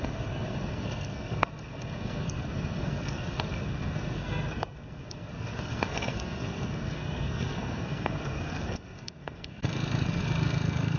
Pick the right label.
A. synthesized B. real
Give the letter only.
A